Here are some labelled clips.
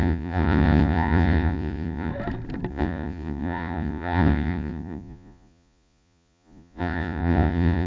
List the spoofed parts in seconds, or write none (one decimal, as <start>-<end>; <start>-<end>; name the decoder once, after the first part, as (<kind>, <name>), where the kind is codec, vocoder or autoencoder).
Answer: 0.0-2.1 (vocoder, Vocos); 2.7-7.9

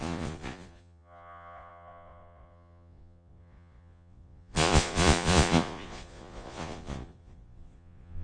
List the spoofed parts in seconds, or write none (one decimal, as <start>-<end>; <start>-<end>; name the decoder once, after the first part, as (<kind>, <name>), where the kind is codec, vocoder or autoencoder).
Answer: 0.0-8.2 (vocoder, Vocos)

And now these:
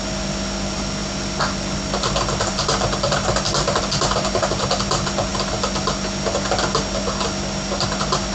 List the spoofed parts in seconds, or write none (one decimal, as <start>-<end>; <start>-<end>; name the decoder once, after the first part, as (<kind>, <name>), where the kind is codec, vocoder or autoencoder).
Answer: none